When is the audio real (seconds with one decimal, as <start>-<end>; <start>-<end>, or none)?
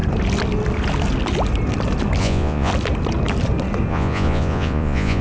0.0-2.2; 2.7-3.9